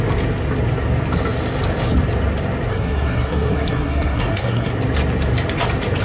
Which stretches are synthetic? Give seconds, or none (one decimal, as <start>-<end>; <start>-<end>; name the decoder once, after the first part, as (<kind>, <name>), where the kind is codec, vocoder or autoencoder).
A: 2.7-4.7 (codec, SNAC)